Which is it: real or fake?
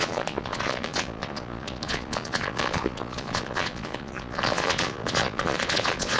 fake